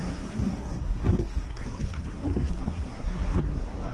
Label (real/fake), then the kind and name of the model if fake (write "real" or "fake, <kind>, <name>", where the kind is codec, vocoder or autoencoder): fake, codec, SNAC